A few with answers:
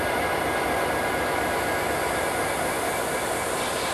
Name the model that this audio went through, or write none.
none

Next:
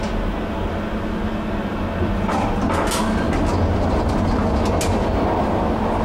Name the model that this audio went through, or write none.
none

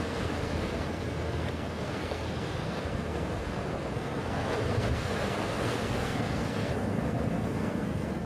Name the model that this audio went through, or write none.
codec, SNAC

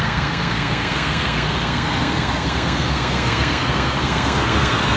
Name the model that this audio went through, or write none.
codec, SNAC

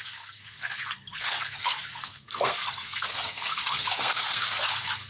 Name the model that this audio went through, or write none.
codec, SNAC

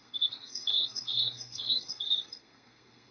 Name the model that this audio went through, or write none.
codec, SNAC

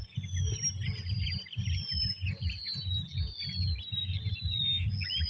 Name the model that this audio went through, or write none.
none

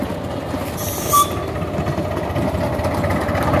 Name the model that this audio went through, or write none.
none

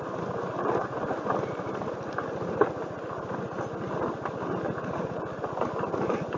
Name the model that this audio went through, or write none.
none